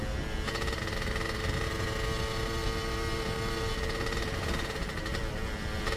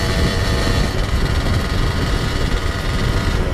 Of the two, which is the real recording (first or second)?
first